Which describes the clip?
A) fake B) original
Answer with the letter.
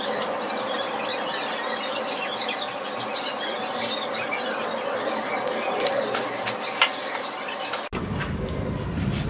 B